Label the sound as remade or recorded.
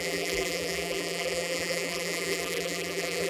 remade